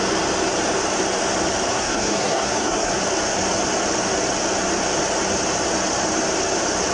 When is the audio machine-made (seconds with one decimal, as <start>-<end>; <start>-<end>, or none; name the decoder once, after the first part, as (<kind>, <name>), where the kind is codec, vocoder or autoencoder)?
1.7-2.9 (codec, SNAC)